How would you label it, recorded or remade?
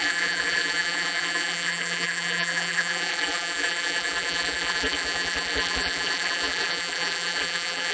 remade